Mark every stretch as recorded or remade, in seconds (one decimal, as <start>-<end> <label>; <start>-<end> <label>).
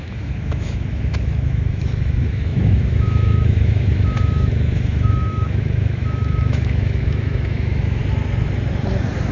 0.0-8.0 remade; 8.0-9.3 recorded